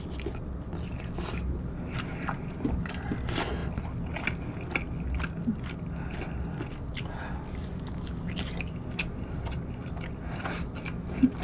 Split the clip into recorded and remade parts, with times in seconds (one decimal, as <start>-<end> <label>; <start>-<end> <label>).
0.0-11.4 recorded